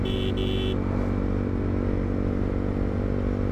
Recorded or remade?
recorded